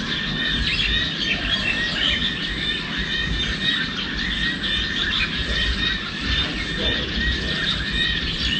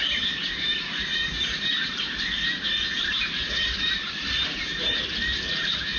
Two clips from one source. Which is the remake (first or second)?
second